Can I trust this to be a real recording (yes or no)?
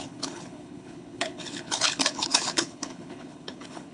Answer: no